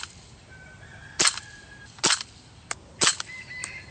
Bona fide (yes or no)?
yes